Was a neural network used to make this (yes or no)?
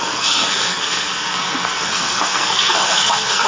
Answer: yes